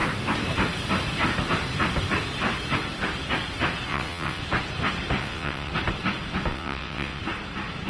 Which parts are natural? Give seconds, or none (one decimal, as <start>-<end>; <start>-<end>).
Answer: 0.0-3.9; 4.4-5.2; 5.7-6.5; 7.2-7.9